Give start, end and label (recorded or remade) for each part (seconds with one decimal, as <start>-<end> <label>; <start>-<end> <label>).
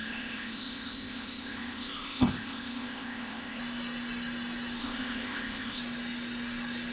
0.0-3.6 remade; 3.6-4.8 recorded; 4.8-5.8 remade; 5.8-6.9 recorded